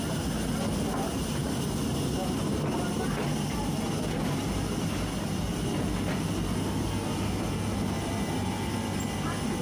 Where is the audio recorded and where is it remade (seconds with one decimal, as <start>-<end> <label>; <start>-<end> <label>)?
0.0-9.6 recorded